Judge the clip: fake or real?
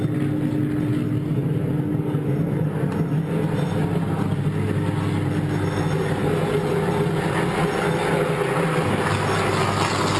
real